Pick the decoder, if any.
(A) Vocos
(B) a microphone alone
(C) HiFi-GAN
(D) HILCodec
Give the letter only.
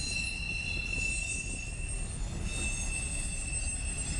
B